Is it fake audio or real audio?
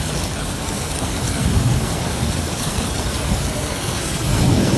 fake